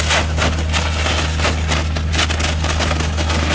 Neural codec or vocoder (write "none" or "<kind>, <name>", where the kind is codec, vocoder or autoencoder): none